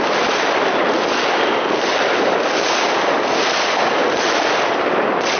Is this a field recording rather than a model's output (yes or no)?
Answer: yes